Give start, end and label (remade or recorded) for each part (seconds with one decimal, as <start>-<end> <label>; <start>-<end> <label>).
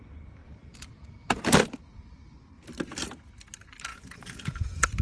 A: 0.0-3.9 recorded; 3.9-5.0 remade